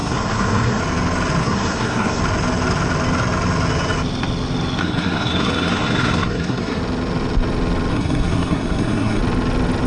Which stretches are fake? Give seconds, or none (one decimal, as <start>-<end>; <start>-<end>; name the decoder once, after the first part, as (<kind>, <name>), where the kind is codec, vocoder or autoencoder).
0.0-0.8 (codec, SNAC); 1.4-2.2; 4.8-6.8; 7.9-9.2